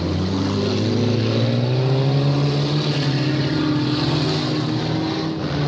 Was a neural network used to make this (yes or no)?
no